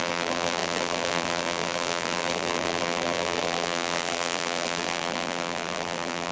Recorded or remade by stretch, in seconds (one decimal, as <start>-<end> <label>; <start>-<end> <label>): 0.0-6.3 remade